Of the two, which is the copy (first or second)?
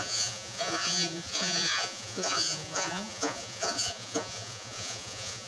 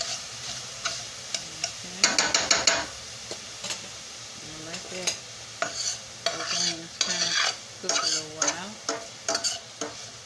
first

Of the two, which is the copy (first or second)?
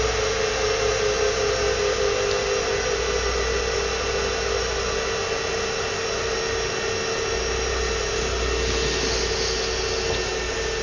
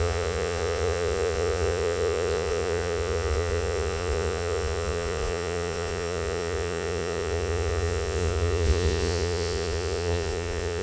second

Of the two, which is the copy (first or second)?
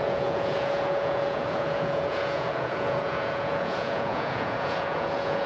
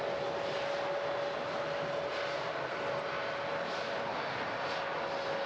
first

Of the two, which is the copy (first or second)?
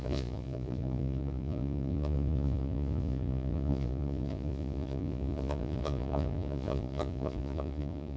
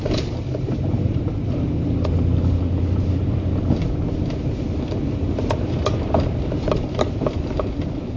first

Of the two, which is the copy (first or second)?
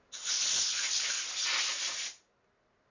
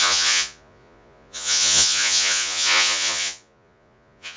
second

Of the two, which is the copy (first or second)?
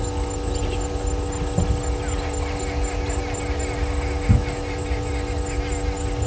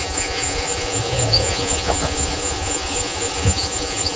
second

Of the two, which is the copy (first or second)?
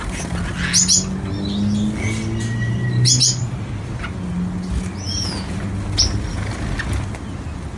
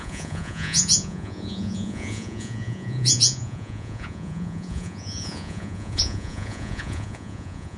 second